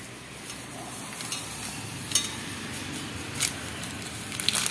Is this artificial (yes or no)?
no